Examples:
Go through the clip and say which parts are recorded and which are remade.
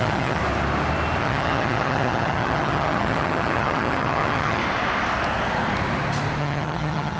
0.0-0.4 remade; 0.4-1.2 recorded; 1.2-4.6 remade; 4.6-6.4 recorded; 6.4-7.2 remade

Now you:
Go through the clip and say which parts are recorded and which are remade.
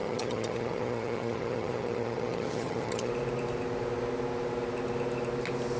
0.0-3.1 remade; 3.1-5.8 recorded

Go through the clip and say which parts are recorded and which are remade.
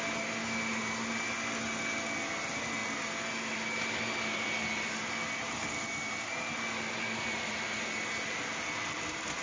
0.0-9.4 recorded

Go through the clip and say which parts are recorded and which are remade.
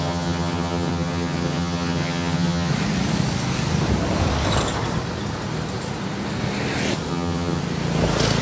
0.0-2.7 remade; 2.7-7.1 recorded; 7.1-7.6 remade; 7.6-8.4 recorded